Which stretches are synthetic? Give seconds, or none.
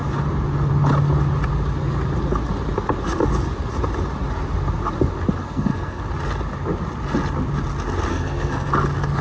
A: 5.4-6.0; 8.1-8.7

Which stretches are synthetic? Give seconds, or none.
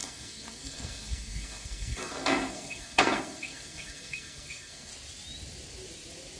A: 0.0-4.9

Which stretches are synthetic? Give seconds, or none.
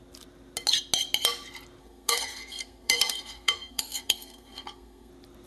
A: 1.8-5.1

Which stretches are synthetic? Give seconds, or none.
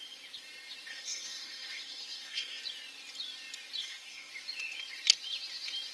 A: 0.9-2.6; 3.8-4.3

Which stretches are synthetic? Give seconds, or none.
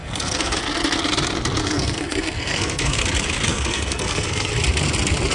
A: 0.0-0.6; 1.6-3.0; 3.5-4.5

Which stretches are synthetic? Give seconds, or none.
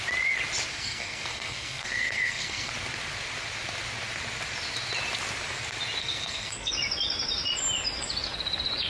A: 0.7-2.7; 6.0-6.7